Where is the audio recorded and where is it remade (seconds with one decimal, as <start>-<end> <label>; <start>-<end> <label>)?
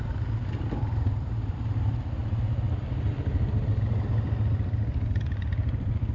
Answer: 0.0-2.2 remade; 2.2-2.8 recorded; 2.8-6.1 remade